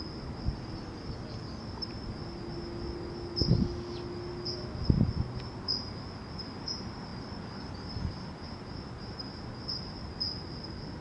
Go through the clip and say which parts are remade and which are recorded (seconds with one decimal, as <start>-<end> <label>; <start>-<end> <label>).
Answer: 0.0-11.0 recorded